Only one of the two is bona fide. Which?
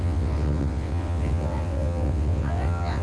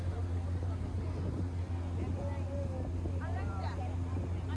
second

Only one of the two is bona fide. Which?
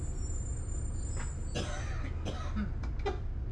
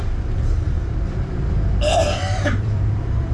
first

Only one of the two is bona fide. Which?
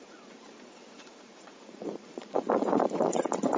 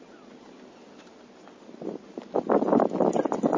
second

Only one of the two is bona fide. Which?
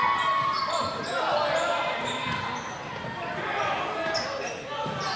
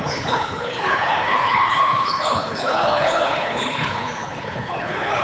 first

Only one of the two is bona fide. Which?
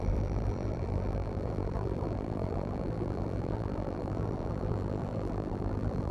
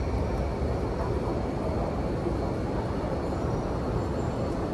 second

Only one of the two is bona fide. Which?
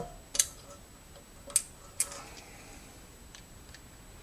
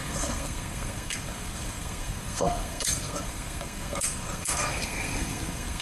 first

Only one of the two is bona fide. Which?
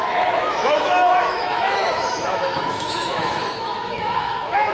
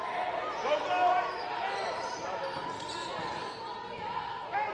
second